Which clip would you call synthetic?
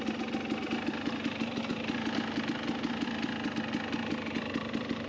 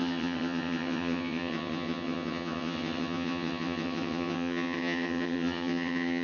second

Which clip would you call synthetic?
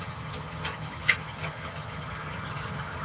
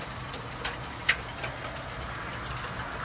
first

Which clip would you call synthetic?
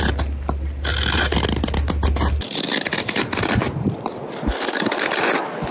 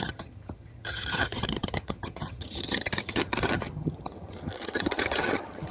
second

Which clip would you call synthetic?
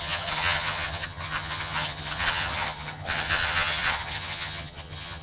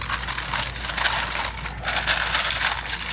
first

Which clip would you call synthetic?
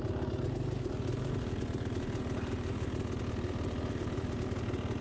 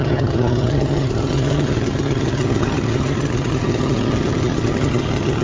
second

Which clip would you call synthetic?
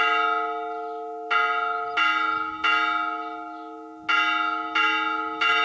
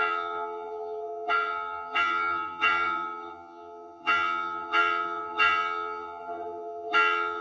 second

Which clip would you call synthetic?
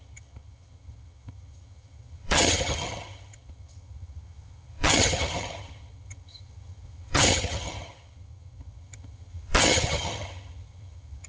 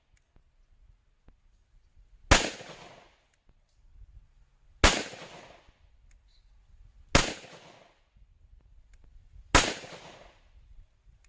first